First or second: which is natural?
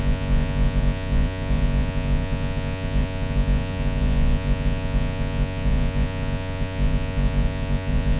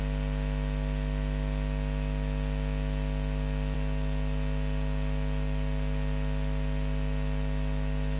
second